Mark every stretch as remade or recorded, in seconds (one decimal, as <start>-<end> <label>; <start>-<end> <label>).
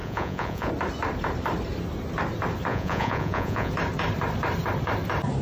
0.0-0.7 remade; 0.7-2.7 recorded; 2.7-3.7 remade; 3.7-5.4 recorded